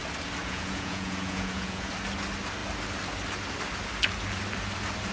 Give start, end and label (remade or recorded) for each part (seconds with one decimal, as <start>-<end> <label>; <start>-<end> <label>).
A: 0.0-0.4 recorded; 0.4-1.9 remade; 1.9-5.1 recorded